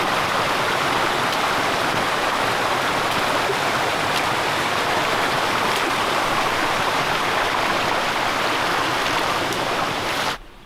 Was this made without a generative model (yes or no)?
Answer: yes